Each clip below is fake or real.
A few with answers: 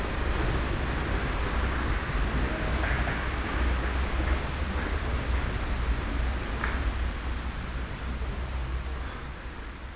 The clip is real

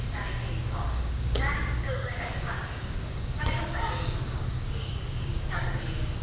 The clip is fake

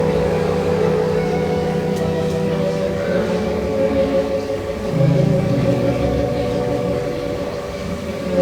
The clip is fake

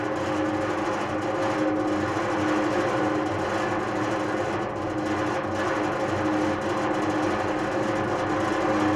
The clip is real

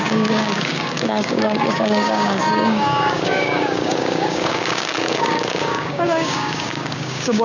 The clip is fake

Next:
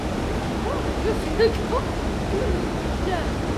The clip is real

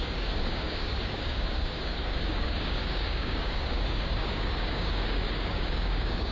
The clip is fake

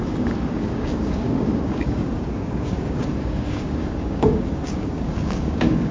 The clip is fake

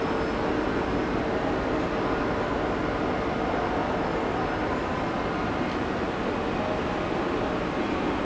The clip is real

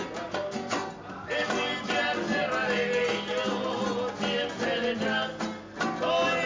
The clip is real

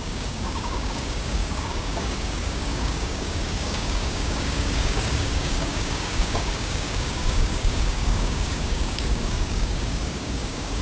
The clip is fake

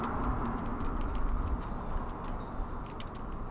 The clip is real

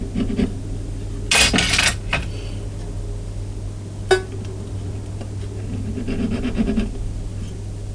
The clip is real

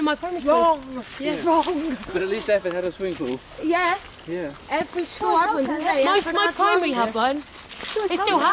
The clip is real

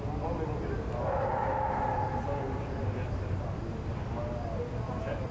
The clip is real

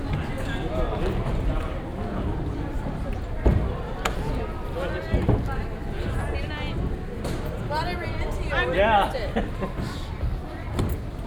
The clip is real